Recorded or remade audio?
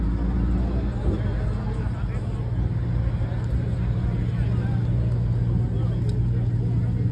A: recorded